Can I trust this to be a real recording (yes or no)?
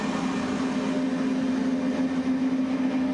yes